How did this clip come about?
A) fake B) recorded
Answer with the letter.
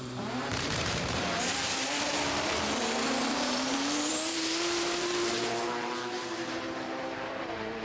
A